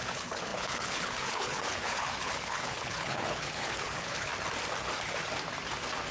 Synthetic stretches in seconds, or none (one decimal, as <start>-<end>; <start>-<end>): 0.0-4.3